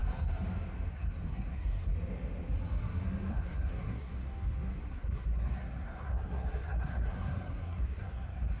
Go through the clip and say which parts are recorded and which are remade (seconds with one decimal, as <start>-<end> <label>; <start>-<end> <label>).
0.0-0.9 recorded; 0.9-1.9 remade; 1.9-3.3 recorded; 3.3-4.1 remade; 4.1-4.8 recorded; 4.8-8.6 remade